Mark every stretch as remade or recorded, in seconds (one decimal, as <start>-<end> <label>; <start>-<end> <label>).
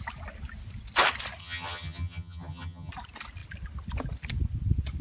0.0-1.4 recorded; 1.4-2.9 remade; 2.9-5.0 recorded